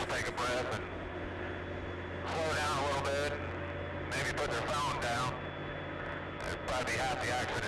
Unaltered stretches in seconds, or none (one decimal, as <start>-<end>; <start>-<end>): 0.0-7.7